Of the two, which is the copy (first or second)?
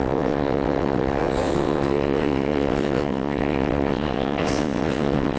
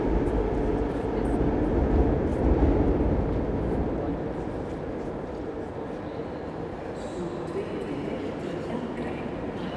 first